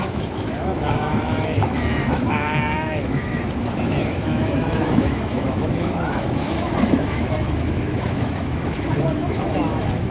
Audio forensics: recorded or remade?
remade